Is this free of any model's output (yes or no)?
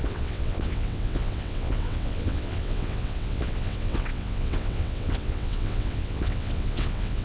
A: no